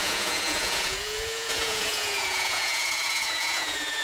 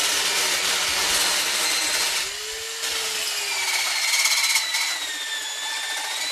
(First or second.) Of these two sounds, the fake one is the first